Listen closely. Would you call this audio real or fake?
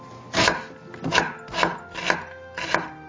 real